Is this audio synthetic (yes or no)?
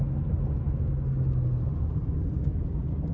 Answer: no